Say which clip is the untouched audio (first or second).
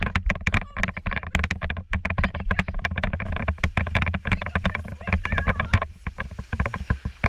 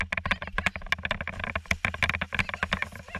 second